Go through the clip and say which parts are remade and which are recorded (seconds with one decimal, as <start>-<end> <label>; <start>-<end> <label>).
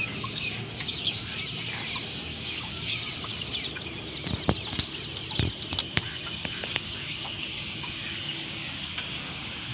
0.0-1.3 remade; 1.3-2.3 recorded; 2.3-3.3 remade; 3.3-6.5 recorded; 6.5-9.7 remade